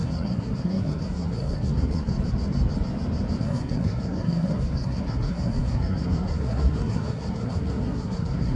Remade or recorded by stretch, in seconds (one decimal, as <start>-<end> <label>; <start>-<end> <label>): 0.0-2.1 remade; 2.1-3.4 recorded; 3.4-8.6 remade